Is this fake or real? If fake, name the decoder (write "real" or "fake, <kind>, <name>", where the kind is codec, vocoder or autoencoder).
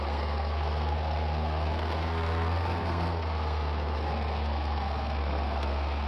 fake, codec, SNAC